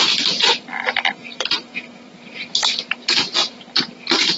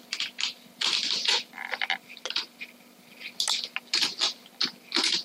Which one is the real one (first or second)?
second